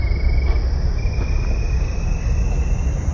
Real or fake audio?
real